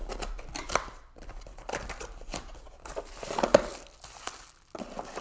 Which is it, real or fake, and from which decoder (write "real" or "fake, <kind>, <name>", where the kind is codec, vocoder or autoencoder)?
real